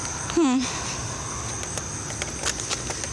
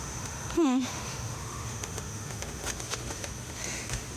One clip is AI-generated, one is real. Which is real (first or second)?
first